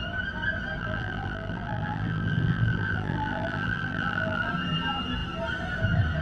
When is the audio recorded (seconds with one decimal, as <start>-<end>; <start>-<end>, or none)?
0.0-0.8; 4.5-6.2